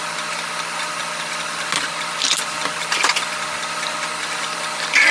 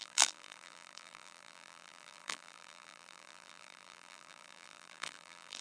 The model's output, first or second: second